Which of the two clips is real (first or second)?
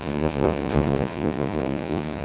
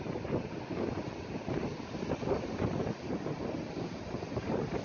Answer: second